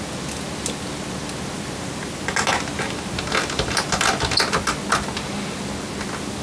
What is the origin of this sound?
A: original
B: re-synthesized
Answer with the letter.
A